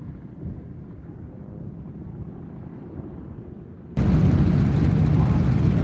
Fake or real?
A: real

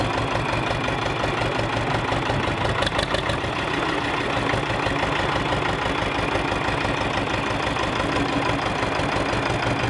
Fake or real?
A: real